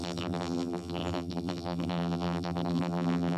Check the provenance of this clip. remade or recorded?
remade